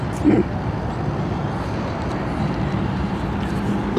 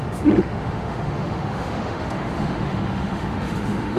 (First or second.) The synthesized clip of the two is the second